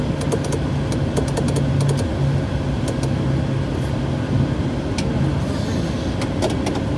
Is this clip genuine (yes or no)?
yes